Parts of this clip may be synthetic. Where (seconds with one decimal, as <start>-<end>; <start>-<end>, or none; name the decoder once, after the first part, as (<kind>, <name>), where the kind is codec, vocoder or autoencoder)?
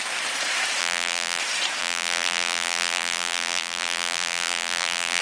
0.8-1.4 (vocoder, BigVGAN v2); 1.8-5.2